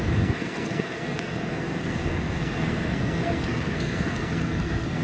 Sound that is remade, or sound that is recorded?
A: remade